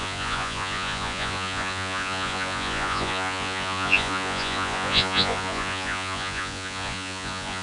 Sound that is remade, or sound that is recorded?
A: remade